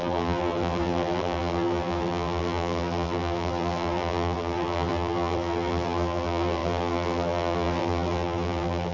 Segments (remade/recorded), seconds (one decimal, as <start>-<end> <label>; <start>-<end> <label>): 0.0-8.9 remade